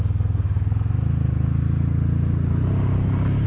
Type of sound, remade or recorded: recorded